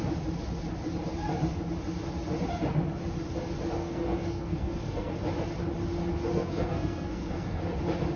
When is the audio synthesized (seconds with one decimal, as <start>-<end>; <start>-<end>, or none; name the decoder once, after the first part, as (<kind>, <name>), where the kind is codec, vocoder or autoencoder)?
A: 3.8-5.1 (codec, SNAC); 6.3-7.6